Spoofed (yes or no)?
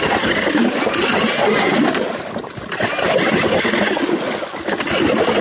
no